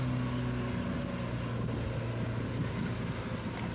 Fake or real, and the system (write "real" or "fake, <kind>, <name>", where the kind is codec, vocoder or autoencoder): real